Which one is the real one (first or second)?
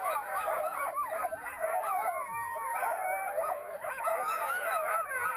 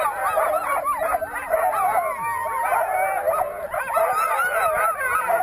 second